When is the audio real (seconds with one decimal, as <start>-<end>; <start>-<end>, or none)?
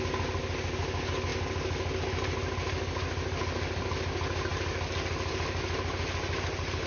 0.0-6.9